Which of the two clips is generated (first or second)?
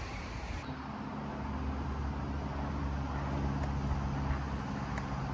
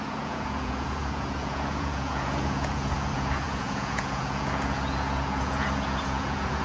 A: second